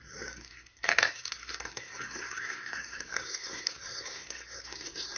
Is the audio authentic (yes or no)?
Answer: no